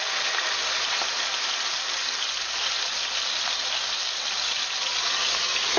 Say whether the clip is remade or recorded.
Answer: recorded